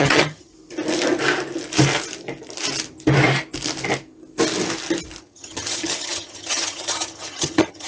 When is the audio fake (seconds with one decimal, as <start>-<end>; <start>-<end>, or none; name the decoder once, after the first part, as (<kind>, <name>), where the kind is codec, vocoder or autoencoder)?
0.0-0.5 (vocoder, HiFi-GAN); 5.2-7.9